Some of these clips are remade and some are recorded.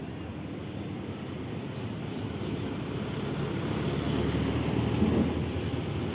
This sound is recorded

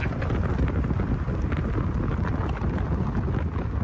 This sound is recorded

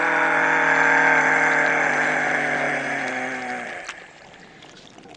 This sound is recorded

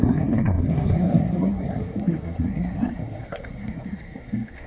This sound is remade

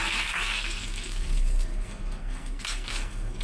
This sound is remade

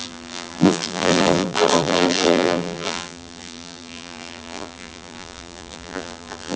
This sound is remade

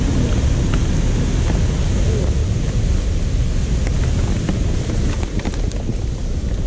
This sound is recorded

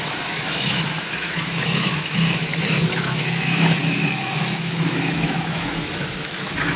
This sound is remade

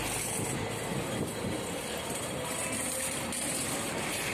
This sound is recorded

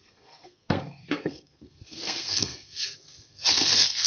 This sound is remade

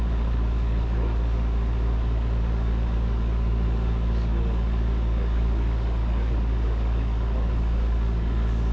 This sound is remade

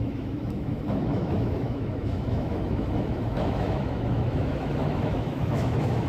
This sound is remade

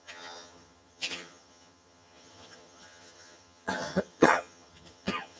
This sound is remade